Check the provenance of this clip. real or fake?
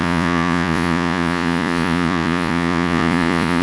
fake